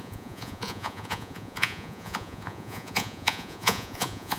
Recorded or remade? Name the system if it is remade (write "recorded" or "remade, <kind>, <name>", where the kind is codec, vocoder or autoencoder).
remade, vocoder, Vocos